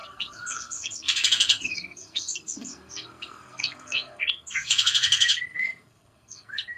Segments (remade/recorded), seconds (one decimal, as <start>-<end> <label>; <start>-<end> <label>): 0.0-6.8 remade